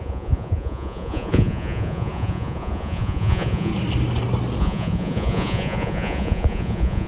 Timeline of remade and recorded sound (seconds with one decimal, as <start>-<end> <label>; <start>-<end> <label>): 0.0-3.7 remade; 3.7-4.6 recorded; 4.6-7.1 remade